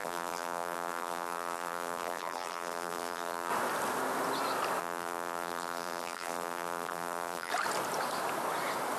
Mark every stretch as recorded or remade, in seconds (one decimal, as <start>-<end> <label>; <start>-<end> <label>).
0.0-3.5 remade; 3.5-4.8 recorded; 4.8-7.5 remade; 7.5-9.0 recorded